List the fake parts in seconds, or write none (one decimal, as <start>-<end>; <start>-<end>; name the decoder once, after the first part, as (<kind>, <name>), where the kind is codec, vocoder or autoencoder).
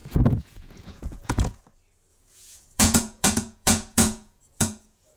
0.0-1.6 (vocoder, Vocos); 2.1-5.2